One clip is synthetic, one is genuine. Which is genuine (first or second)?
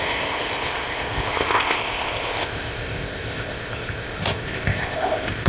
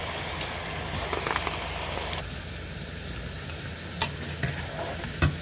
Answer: second